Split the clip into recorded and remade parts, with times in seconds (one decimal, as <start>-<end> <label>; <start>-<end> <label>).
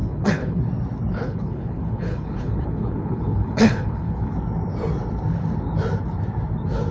0.0-0.6 remade; 0.6-1.1 recorded; 1.1-4.3 remade; 4.3-6.9 recorded